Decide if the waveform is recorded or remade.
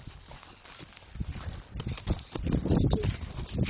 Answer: remade